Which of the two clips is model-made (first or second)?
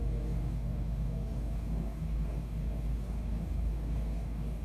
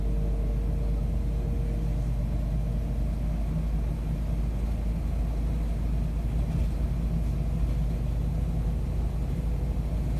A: first